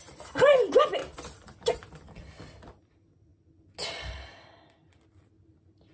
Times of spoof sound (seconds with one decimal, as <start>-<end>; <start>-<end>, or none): none